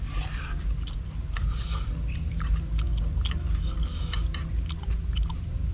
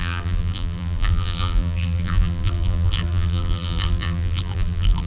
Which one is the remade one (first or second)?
second